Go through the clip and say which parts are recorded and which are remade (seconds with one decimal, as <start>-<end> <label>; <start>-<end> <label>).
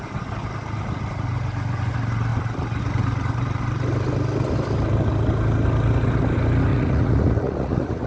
0.0-6.7 recorded; 6.7-8.1 remade